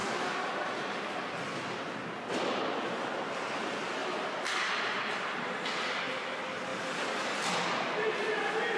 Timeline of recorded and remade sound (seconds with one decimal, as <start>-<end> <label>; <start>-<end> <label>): 0.0-2.6 remade; 2.6-4.0 recorded; 4.0-6.0 remade; 6.0-6.7 recorded; 6.7-8.8 remade

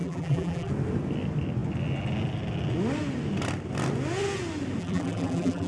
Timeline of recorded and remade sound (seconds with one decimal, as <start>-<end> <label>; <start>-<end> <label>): 0.0-0.7 remade; 0.7-4.8 recorded; 4.8-5.7 remade